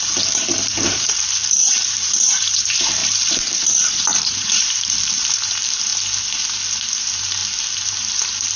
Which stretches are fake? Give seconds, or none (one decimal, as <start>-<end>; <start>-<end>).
0.0-5.9; 6.9-7.4; 8.1-8.6